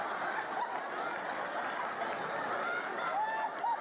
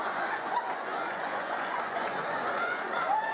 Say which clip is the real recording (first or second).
first